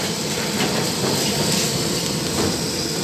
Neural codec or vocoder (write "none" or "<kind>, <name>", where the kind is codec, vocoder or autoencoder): none